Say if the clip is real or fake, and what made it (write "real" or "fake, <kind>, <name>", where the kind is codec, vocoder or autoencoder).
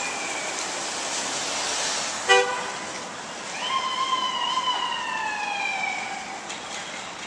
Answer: real